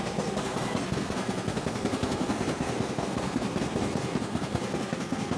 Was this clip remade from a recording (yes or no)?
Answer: yes